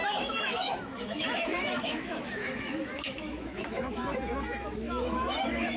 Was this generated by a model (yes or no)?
yes